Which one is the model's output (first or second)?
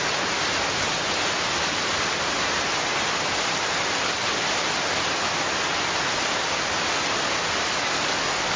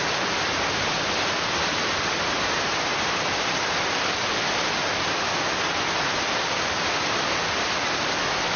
second